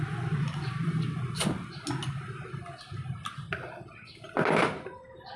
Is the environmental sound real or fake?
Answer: real